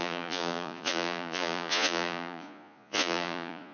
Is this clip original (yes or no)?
no